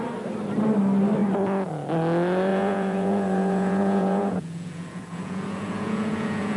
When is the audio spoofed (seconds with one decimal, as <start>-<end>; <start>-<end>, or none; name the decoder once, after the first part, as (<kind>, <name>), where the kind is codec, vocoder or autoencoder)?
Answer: 2.5-6.6 (vocoder, Vocos)